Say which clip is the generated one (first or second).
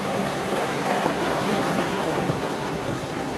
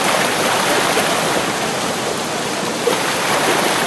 first